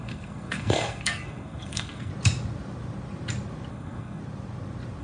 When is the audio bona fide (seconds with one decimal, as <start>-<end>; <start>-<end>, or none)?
2.1-3.7; 4.2-5.0